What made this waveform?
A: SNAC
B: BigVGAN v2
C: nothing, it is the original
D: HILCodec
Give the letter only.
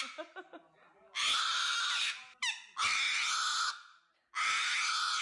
C